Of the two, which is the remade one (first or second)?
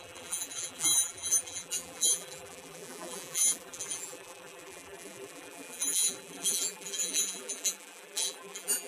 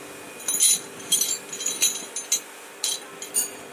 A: first